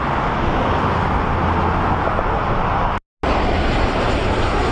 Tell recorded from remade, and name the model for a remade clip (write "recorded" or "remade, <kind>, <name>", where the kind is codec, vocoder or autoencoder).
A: recorded